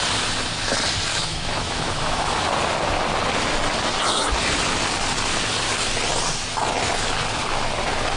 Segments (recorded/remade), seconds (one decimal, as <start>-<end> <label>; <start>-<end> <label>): 0.0-1.1 recorded; 1.1-2.5 remade; 2.5-8.2 recorded